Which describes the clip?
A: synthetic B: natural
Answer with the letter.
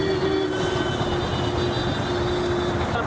B